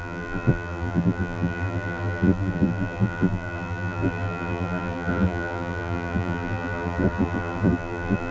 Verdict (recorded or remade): remade